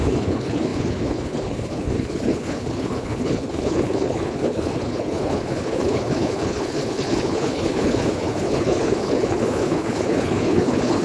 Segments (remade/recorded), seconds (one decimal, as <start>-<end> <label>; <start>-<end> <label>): 0.0-11.0 remade